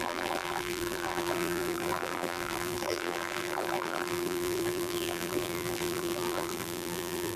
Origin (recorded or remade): remade